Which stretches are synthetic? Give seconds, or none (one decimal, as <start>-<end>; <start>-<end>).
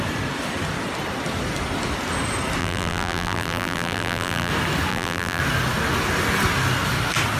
2.6-4.5; 4.9-5.4